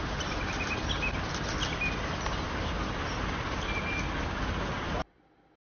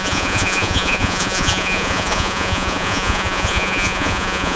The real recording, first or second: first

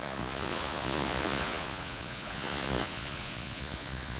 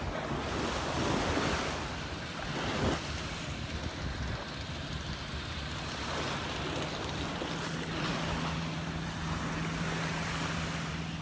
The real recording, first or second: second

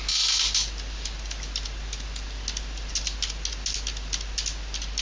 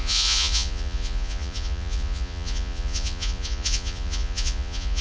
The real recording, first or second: first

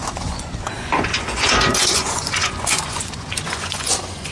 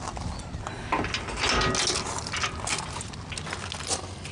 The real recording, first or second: second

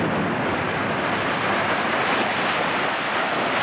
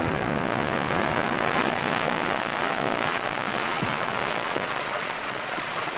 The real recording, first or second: first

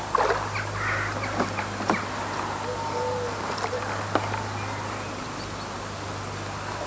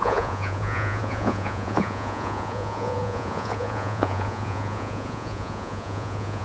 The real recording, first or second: first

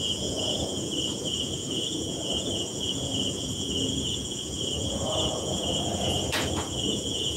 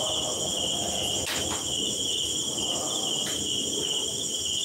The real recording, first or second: second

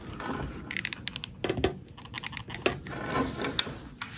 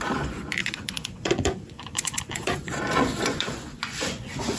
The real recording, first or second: first